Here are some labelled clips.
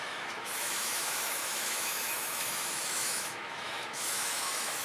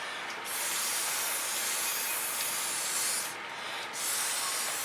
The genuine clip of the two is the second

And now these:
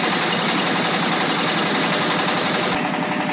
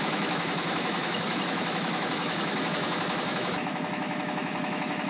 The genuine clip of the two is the first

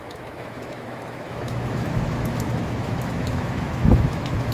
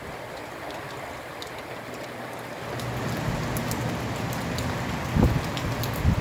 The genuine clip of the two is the second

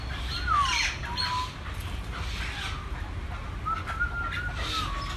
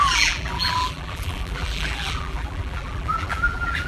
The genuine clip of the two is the first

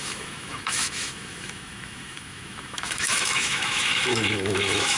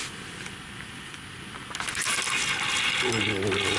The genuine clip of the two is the second